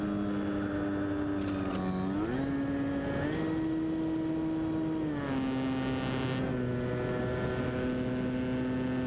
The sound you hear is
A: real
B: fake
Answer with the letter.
A